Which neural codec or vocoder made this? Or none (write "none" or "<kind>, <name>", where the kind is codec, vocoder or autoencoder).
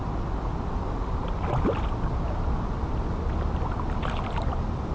none